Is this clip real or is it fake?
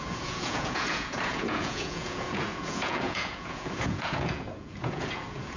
fake